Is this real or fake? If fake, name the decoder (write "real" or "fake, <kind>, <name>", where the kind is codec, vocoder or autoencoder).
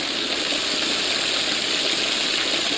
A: real